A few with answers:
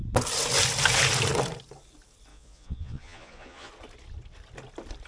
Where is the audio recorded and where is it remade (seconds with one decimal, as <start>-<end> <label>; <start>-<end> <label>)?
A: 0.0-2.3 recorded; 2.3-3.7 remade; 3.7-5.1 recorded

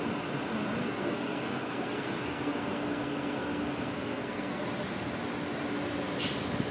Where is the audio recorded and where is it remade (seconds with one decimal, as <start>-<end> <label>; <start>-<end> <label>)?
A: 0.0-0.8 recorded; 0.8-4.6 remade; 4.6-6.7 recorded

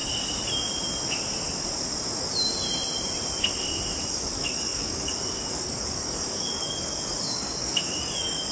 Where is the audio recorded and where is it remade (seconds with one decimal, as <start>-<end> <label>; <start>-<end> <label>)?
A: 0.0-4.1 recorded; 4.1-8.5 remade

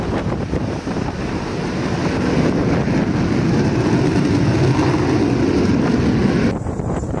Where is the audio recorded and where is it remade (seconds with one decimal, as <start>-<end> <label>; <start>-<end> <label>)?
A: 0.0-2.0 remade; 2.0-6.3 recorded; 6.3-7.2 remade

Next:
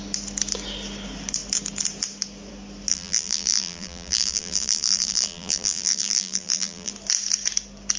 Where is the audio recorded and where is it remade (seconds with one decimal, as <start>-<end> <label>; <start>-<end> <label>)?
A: 0.0-2.9 recorded; 2.9-6.9 remade; 6.9-8.0 recorded

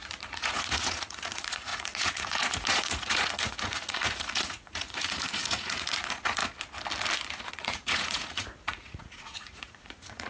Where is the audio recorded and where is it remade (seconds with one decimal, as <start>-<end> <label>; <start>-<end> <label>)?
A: 0.0-6.4 remade; 6.4-7.5 recorded; 7.5-10.3 remade